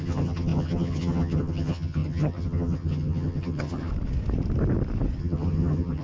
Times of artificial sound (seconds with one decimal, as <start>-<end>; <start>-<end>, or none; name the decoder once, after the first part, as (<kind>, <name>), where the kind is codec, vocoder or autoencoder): 0.0-3.9 (vocoder, HiFi-GAN); 5.2-6.0